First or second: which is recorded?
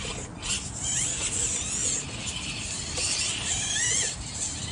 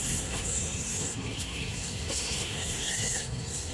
first